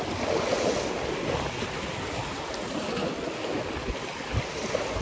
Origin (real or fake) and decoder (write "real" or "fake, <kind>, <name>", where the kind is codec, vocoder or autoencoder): real